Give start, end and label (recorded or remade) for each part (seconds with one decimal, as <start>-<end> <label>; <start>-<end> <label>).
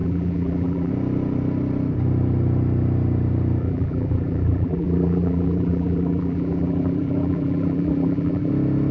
0.0-0.9 remade; 0.9-3.6 recorded; 3.6-8.5 remade; 8.5-8.9 recorded